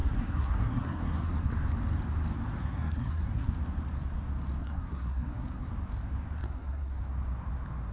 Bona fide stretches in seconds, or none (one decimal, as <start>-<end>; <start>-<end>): 1.5-2.6; 3.5-4.6; 5.7-6.4; 7.0-7.9